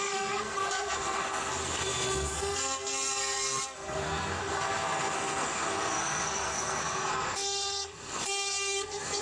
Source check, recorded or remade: remade